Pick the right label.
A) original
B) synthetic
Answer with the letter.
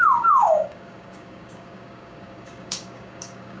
B